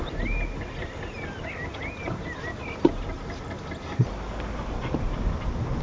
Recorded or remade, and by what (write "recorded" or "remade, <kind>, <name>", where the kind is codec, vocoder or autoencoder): recorded